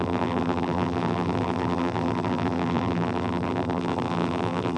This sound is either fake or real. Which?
fake